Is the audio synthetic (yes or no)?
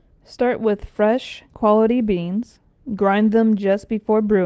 no